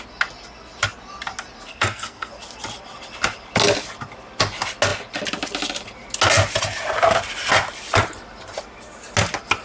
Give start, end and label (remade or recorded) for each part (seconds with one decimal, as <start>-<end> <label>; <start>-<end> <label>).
0.0-1.7 recorded; 1.7-2.3 remade; 2.3-9.6 recorded